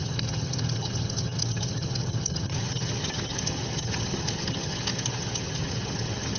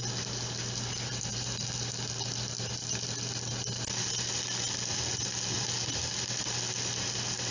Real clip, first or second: second